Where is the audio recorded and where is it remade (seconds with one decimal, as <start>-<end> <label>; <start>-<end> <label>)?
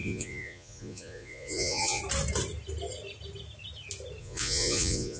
0.0-2.0 remade; 2.0-4.2 recorded; 4.2-5.2 remade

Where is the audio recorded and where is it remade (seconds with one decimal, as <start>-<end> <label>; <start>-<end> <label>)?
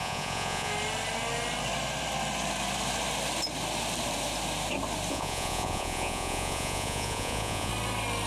0.0-0.7 remade; 0.7-5.1 recorded; 5.1-7.7 remade; 7.7-8.3 recorded